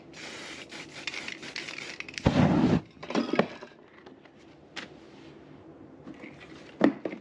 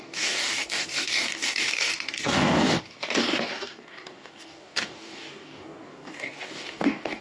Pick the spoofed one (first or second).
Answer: second